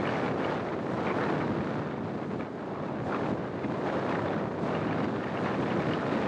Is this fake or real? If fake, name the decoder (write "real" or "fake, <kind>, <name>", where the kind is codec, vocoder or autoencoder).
real